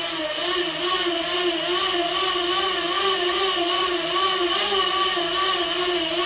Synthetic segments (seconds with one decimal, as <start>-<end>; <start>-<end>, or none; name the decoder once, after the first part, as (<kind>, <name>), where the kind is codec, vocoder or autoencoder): none